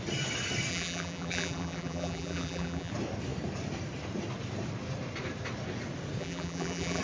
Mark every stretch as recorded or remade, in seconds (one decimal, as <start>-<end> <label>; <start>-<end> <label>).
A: 0.0-0.7 recorded; 0.7-2.9 remade; 2.9-6.2 recorded; 6.2-7.0 remade